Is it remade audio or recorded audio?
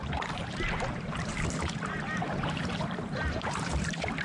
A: remade